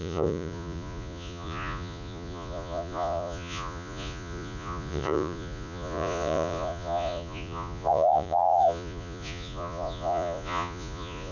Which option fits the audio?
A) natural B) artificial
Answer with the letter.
B